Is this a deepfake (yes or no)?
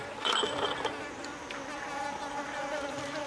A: no